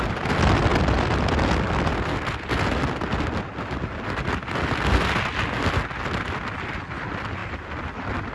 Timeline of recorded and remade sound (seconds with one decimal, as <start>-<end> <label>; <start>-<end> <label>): 0.0-8.3 recorded